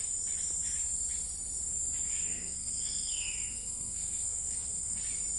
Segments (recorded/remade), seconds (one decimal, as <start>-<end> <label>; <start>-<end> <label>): 0.0-2.1 recorded; 2.1-5.0 remade; 5.0-5.4 recorded